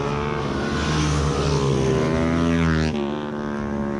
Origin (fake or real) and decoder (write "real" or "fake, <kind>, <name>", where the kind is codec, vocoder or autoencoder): real